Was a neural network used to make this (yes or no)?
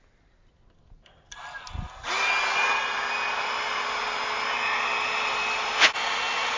no